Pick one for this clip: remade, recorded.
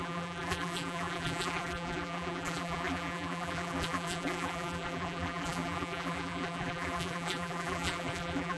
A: remade